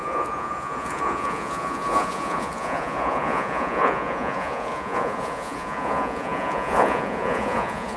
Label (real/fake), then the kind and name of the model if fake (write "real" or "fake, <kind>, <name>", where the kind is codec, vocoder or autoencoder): fake, vocoder, Vocos